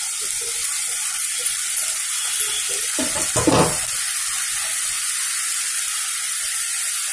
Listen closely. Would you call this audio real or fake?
real